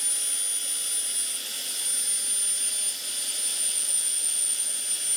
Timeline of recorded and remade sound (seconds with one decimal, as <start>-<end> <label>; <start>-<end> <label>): 0.0-3.5 recorded; 3.5-4.8 remade; 4.8-5.2 recorded